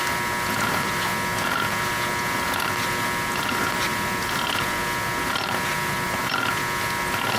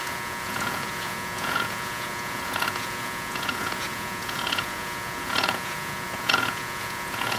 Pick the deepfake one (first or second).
second